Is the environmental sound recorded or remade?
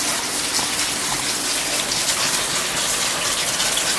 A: recorded